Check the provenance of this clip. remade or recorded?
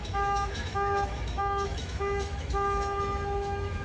remade